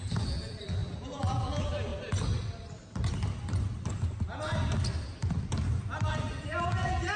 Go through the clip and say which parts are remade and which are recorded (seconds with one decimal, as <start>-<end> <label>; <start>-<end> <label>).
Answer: 0.0-1.9 remade; 1.9-6.1 recorded; 6.1-7.2 remade